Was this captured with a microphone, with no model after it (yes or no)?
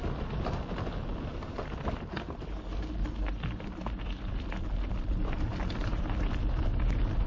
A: yes